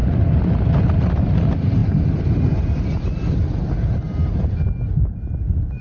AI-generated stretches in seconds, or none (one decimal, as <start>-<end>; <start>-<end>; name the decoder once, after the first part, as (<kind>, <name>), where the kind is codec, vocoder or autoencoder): none